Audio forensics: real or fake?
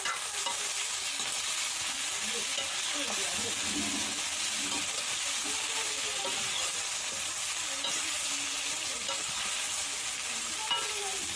real